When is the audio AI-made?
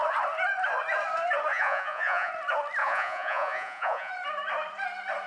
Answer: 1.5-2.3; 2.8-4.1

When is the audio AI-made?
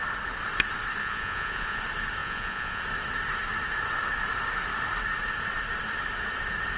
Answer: 1.0-1.8; 2.2-2.8